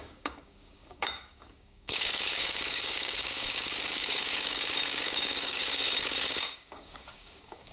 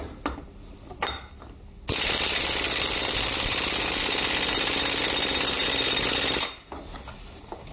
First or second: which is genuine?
second